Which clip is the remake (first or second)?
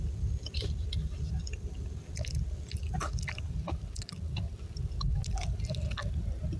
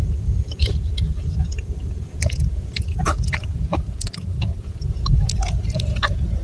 second